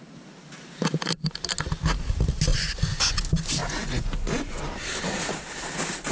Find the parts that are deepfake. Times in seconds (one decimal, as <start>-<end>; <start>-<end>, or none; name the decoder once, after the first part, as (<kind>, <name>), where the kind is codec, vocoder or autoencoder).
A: 2.5-3.2 (vocoder, Vocos); 3.6-4.6